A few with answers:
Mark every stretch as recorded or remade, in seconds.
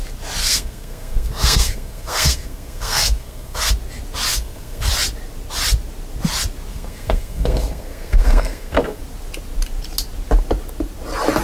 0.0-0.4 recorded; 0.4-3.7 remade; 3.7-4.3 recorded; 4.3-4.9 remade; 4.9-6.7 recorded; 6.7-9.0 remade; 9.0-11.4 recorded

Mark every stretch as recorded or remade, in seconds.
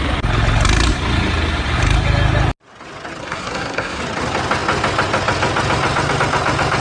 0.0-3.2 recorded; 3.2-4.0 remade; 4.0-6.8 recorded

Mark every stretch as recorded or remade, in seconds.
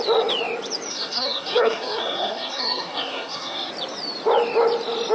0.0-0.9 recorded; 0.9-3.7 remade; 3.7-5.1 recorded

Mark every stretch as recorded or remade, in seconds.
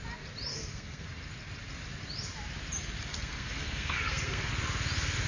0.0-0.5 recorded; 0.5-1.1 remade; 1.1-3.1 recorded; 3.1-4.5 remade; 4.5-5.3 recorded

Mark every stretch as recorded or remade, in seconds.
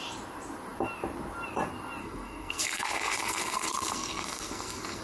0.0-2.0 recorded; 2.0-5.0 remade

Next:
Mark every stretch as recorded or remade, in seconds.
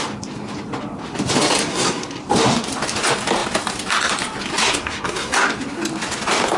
0.0-1.7 recorded; 1.7-2.2 remade; 2.2-4.5 recorded; 4.5-5.3 remade; 5.3-6.6 recorded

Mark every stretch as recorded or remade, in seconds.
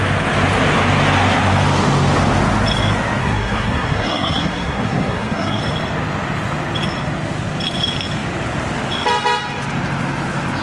0.0-3.2 recorded; 3.2-5.6 remade; 5.6-10.6 recorded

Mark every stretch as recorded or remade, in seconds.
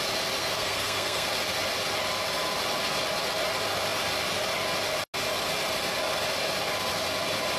0.0-0.4 recorded; 0.4-1.3 remade; 1.3-7.6 recorded